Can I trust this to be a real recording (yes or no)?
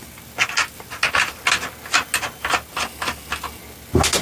yes